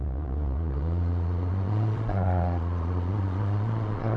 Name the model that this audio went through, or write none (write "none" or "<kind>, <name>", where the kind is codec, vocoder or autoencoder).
vocoder, Vocos